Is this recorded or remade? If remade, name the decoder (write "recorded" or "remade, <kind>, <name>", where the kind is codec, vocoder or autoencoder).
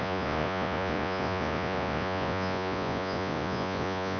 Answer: remade, vocoder, Vocos